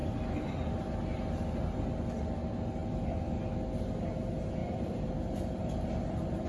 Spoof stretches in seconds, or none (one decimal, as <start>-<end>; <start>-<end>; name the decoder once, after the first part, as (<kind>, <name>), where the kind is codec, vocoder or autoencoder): 0.0-0.8 (vocoder, BigVGAN v2); 2.8-3.4; 4.6-5.1